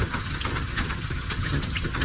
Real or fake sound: fake